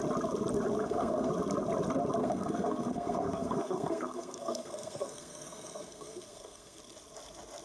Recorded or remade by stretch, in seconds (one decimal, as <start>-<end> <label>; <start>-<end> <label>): 0.0-0.8 recorded; 0.8-1.3 remade; 1.3-2.2 recorded; 2.2-6.8 remade; 6.8-7.6 recorded